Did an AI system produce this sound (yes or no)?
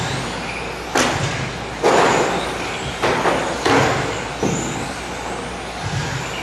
no